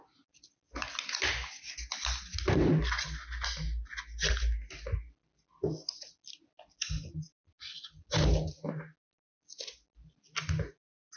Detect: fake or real real